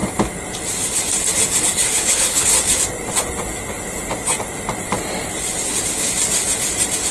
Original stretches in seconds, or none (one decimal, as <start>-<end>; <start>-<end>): 0.0-1.6; 2.5-7.1